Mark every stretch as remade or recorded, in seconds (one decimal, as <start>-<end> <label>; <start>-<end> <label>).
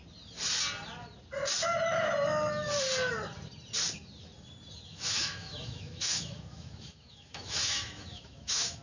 0.0-4.9 recorded; 4.9-8.8 remade